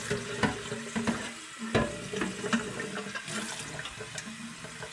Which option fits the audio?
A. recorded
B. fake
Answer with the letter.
A